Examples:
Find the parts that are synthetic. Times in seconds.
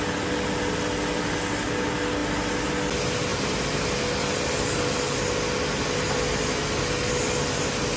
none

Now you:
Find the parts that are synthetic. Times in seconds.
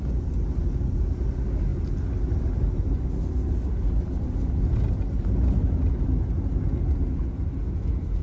none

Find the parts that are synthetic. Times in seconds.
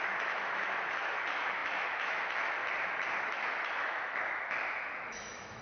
0.0-2.6 (autoencoder, DAC-VAE); 3.2-5.6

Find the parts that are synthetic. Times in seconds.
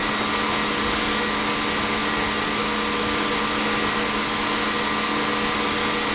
none